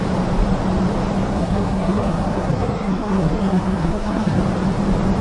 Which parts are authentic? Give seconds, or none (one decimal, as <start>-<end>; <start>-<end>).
0.0-1.3; 4.4-5.2